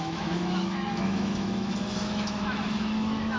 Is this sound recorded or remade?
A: remade